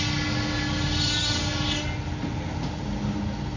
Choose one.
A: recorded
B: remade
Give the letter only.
A